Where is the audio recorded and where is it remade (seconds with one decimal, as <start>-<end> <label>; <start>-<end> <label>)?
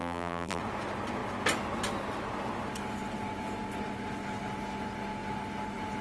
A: 0.0-0.6 remade; 0.6-6.0 recorded